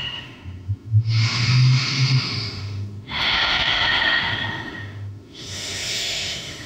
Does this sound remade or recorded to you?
remade